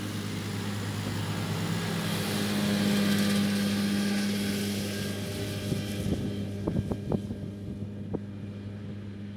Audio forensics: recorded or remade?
recorded